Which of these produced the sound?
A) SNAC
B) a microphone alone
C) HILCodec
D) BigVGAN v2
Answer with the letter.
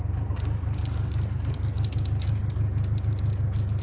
B